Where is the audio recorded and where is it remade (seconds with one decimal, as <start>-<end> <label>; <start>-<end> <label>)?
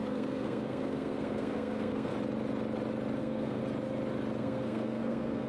0.0-2.1 remade; 2.1-3.2 recorded; 3.2-3.6 remade; 3.6-4.4 recorded; 4.4-5.5 remade